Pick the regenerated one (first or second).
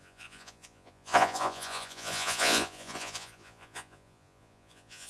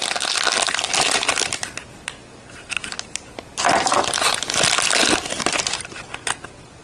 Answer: first